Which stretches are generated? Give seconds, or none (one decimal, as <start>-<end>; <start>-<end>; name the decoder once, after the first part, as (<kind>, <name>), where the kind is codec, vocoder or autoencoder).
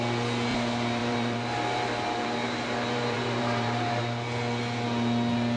1.0-4.0 (vocoder, BigVGAN v2)